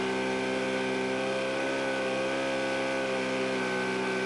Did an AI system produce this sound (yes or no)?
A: no